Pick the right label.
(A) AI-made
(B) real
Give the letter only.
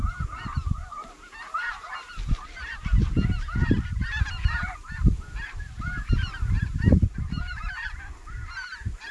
A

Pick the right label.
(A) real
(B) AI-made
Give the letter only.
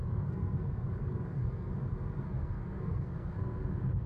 B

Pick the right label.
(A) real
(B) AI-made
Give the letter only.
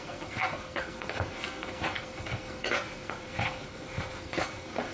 B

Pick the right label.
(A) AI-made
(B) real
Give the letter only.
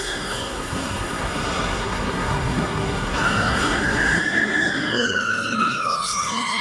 A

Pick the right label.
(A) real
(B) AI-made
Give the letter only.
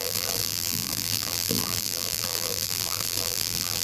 B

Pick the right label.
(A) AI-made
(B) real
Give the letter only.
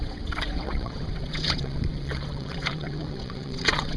A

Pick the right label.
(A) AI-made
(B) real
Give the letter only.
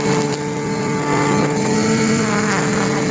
B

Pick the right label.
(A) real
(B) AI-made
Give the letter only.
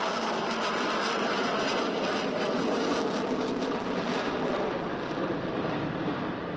B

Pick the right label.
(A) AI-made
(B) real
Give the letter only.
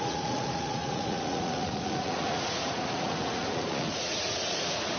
A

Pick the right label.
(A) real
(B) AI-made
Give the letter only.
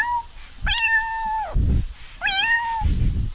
A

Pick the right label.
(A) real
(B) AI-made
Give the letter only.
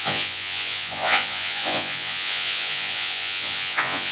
B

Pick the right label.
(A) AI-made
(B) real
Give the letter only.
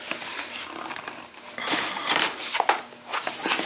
B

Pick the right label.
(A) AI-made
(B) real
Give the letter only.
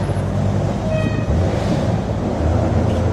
B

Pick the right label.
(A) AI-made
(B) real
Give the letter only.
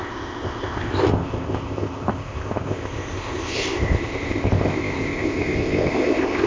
A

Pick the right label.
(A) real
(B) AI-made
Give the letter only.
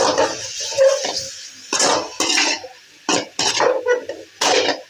A